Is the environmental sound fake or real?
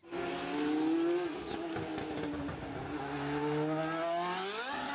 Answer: real